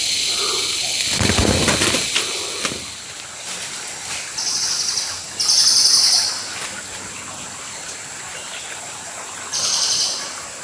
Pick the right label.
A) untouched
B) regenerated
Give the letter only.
A